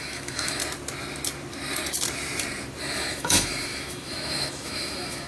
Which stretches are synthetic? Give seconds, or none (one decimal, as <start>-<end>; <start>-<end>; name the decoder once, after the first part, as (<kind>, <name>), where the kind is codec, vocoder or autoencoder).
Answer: 0.0-0.6 (autoencoder, DAC-VAE); 2.8-5.3